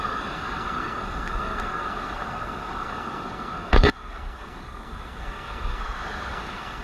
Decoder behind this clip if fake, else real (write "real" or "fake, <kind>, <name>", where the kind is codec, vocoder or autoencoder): fake, codec, SNAC